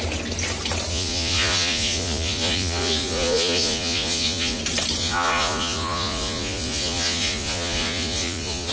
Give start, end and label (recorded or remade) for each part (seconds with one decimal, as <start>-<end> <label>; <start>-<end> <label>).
0.0-0.9 recorded; 0.9-4.6 remade; 4.6-5.0 recorded; 5.0-8.7 remade